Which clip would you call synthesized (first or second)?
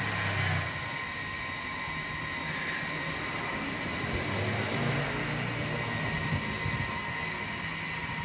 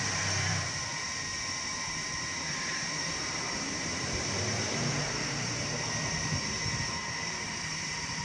second